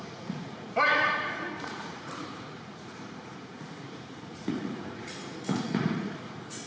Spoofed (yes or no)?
yes